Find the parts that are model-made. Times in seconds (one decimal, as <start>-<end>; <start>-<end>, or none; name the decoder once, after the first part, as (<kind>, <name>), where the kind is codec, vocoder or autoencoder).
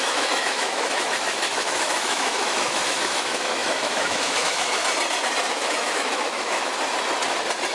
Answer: 0.0-4.8 (autoencoder, DAC-VAE); 5.5-6.7